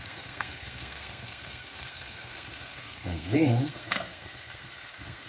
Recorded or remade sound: remade